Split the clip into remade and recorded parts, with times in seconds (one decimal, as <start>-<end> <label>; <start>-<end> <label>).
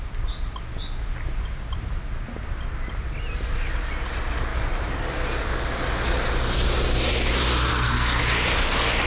0.0-7.7 recorded; 7.7-8.2 remade; 8.2-9.1 recorded